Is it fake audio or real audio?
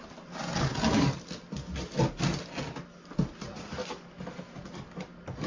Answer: real